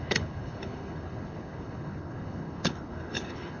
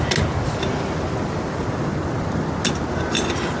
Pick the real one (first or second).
second